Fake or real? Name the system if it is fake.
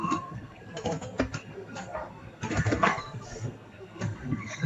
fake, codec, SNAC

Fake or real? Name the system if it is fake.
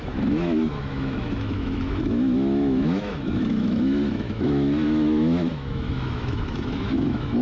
fake, autoencoder, DAC-VAE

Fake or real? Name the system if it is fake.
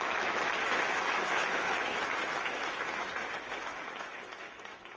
fake, autoencoder, DAC-VAE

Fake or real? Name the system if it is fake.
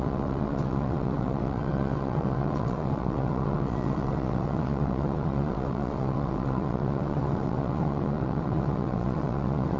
fake, vocoder, WaveNeXt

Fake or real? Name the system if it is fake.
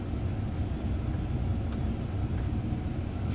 real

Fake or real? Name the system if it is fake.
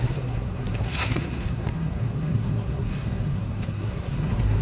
fake, codec, SNAC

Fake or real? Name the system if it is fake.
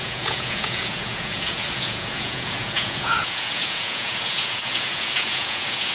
fake, vocoder, Vocos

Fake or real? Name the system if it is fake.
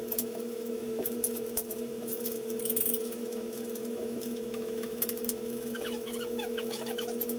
fake, autoencoder, DAC-VAE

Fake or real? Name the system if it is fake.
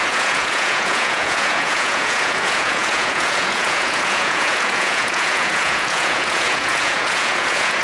fake, vocoder, Vocos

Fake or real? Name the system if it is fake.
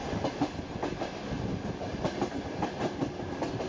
real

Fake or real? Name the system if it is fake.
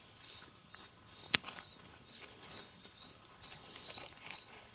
fake, codec, HILCodec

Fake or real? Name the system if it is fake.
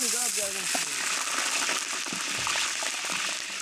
real